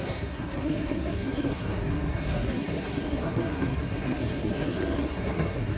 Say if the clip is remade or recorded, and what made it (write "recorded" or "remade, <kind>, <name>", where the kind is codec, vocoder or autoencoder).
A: remade, codec, SNAC